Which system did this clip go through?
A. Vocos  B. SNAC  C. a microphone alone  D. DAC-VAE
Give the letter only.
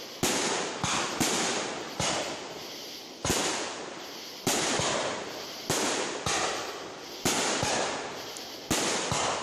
C